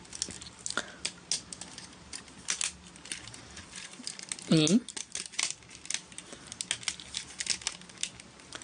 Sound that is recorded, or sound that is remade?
recorded